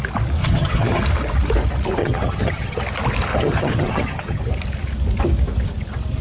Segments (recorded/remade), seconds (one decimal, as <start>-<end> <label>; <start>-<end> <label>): 0.0-0.4 recorded; 0.4-1.0 remade; 1.0-2.0 recorded; 2.0-2.8 remade; 2.8-3.3 recorded; 3.3-4.4 remade; 4.4-6.2 recorded